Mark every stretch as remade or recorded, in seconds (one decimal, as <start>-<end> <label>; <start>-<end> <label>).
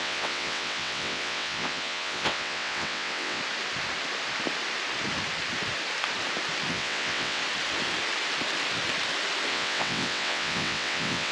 0.0-3.4 remade; 3.4-6.7 recorded; 6.7-7.4 remade; 7.4-9.5 recorded; 9.5-11.3 remade